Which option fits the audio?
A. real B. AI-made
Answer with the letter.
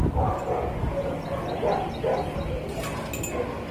A